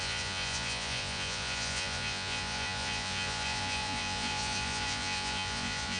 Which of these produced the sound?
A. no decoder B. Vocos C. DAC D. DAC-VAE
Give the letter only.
B